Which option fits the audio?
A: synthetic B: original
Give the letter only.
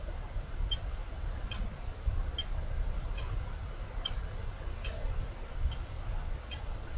B